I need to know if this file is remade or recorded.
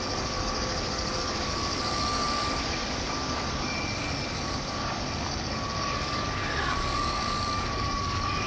remade